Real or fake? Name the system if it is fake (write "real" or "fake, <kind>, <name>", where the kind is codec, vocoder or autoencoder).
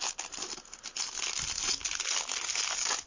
real